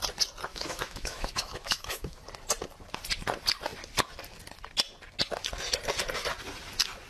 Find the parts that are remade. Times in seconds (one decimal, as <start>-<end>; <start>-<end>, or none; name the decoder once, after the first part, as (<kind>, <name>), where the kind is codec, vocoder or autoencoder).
0.5-2.2 (autoencoder, DAC-VAE)